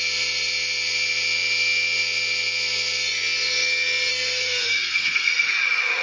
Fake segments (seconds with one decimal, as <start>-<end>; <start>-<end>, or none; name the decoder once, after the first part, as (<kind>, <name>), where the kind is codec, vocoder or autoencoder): 4.1-5.5 (codec, SNAC)